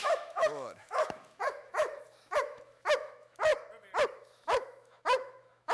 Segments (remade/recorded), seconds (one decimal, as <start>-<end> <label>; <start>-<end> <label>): 0.0-3.5 remade; 3.5-4.1 recorded; 4.1-5.7 remade